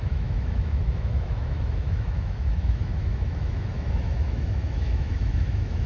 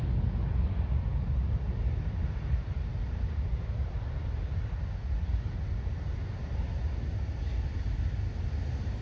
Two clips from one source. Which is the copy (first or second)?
first